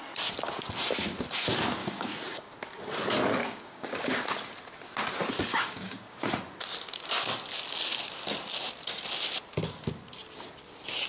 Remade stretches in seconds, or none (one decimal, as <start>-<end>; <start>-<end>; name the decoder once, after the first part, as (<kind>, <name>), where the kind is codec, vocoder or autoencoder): 1.8-2.5 (codec, DAC); 3.4-4.1; 5.5-6.3